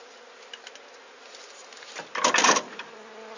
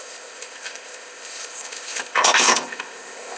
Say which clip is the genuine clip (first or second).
first